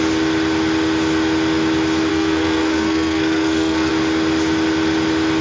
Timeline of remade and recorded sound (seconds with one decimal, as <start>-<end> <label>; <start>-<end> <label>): 0.0-2.1 recorded; 2.1-3.9 remade; 3.9-5.4 recorded